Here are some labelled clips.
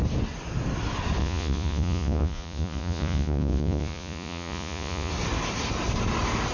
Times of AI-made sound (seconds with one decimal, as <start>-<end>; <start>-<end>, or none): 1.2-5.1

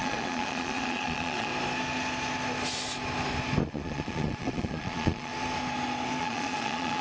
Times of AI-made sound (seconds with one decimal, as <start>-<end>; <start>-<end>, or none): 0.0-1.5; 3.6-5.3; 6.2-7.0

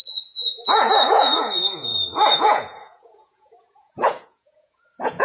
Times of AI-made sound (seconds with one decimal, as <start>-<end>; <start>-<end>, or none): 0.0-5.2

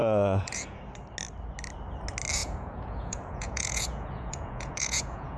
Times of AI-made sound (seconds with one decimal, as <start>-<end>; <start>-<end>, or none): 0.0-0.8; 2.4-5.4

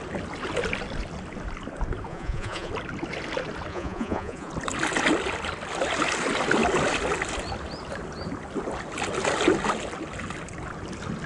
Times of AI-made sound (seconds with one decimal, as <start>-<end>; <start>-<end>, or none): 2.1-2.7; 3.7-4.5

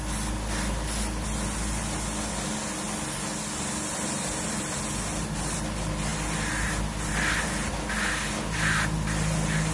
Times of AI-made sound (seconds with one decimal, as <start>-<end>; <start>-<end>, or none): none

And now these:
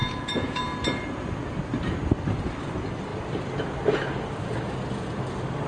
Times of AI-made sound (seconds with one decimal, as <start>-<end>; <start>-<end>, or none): 0.0-0.6